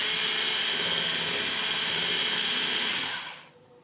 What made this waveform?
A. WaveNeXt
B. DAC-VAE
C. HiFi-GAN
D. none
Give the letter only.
D